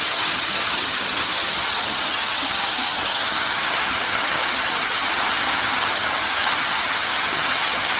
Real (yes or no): no